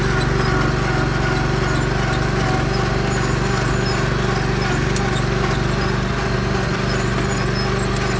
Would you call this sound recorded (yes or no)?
yes